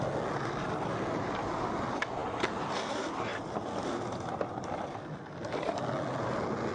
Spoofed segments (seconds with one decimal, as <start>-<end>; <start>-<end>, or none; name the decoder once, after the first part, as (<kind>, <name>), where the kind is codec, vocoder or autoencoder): none